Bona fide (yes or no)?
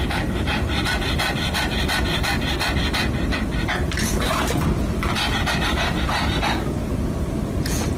yes